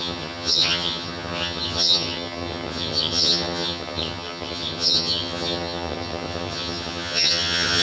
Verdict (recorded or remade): remade